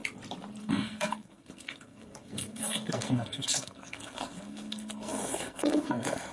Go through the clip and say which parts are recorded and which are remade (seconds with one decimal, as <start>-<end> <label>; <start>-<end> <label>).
0.0-0.6 recorded; 0.6-6.3 remade